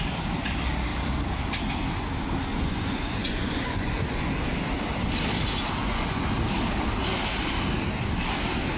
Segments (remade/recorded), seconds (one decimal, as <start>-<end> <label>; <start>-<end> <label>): 0.0-2.5 recorded; 2.5-4.3 remade; 4.3-5.8 recorded; 5.8-6.3 remade; 6.3-8.8 recorded